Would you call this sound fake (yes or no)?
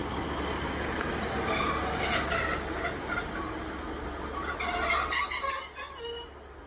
no